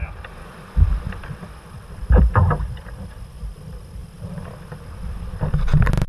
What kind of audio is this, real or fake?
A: fake